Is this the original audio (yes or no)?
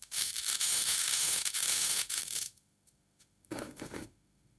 no